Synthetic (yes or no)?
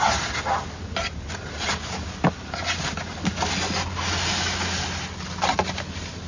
no